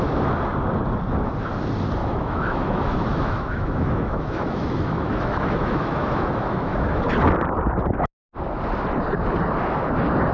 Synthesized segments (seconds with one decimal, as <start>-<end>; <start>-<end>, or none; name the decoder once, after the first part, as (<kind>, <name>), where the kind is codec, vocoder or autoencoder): 2.0-7.0 (autoencoder, DAC-VAE)